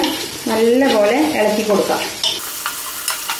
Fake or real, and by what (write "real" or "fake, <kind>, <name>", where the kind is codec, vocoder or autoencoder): real